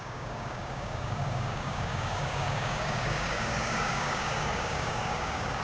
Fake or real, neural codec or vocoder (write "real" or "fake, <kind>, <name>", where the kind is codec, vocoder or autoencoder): fake, codec, DAC